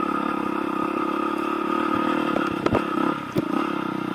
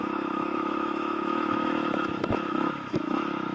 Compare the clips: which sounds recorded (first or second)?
first